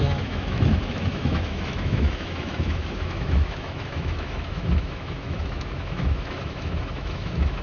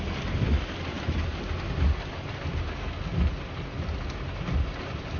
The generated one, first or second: first